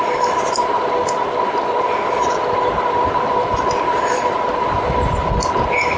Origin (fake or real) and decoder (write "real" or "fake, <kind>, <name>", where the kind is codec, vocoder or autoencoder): real